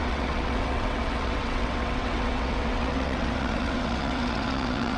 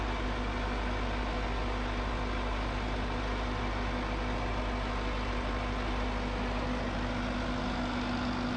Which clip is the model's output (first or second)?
first